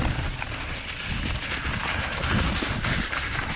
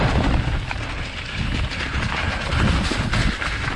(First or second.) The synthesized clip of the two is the first